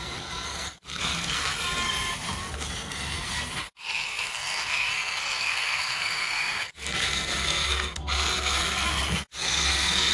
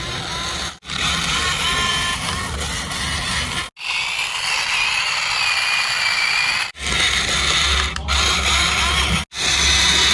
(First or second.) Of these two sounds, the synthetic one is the first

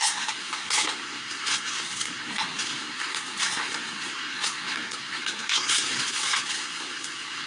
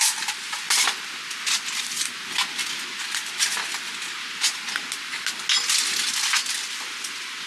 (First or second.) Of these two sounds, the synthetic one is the first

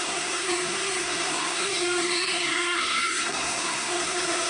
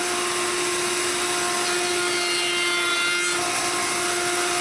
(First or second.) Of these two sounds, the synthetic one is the first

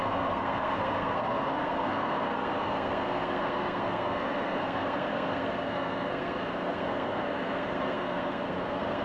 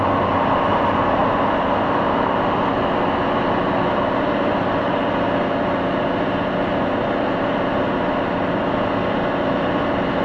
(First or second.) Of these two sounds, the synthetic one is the first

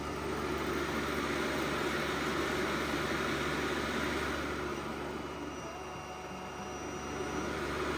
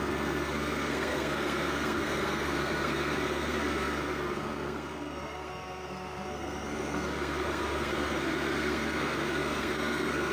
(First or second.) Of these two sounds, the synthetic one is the second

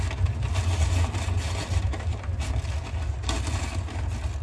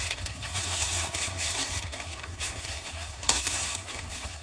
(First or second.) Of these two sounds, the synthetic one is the second